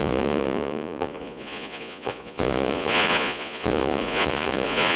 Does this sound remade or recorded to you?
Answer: remade